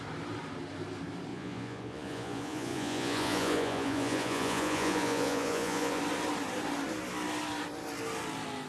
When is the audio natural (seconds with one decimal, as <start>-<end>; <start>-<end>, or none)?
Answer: 0.0-1.3; 6.0-8.7